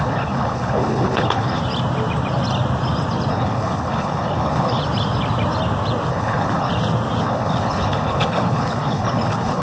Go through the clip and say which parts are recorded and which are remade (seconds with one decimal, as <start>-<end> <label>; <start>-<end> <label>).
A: 0.0-1.6 remade; 1.6-3.3 recorded; 3.3-4.8 remade; 4.8-6.1 recorded; 6.1-6.7 remade; 6.7-7.2 recorded; 7.2-9.6 remade